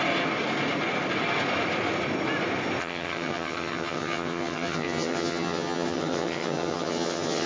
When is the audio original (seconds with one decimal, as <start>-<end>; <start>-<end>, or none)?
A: 0.0-2.8